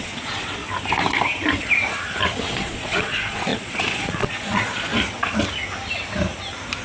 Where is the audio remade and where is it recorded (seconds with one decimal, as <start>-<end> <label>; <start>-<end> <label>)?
0.0-0.6 remade; 0.6-2.5 recorded; 2.5-4.9 remade; 4.9-6.8 recorded